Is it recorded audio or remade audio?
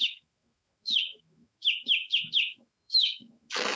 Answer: remade